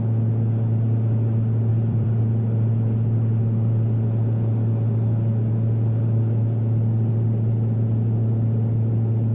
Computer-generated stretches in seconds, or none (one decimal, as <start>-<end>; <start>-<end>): 1.7-2.2